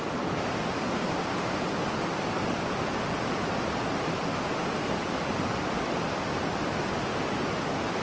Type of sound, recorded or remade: recorded